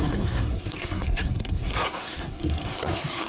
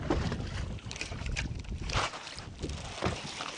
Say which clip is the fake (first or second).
first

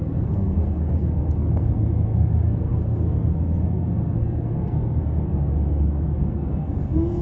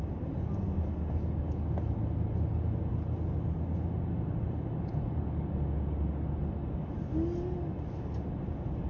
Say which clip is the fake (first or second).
first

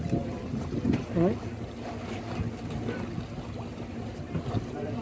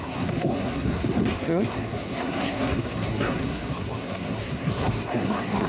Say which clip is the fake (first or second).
second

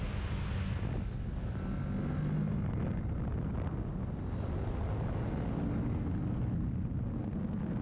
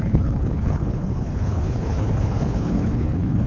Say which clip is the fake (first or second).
second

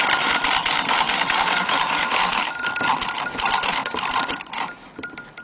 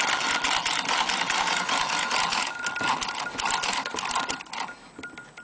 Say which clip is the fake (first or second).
first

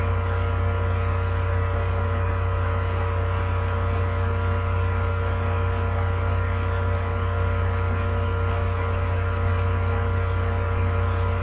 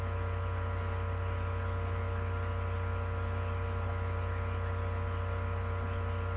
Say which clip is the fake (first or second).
first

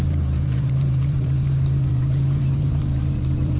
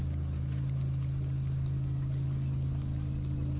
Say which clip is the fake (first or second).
first